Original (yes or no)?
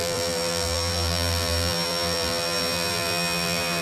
no